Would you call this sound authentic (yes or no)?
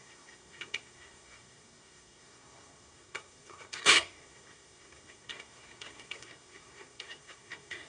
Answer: no